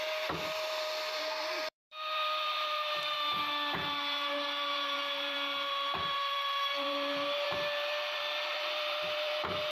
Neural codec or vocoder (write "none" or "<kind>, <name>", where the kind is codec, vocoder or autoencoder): vocoder, BigVGAN v2